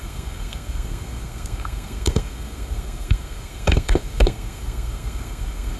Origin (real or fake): fake